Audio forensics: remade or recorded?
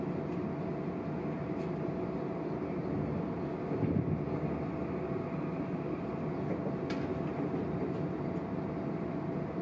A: recorded